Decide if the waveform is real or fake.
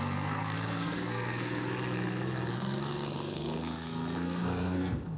fake